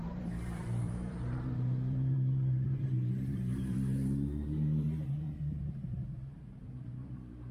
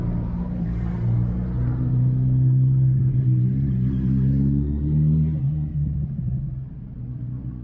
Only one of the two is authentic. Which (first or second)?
second